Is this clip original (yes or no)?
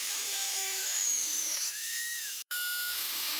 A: no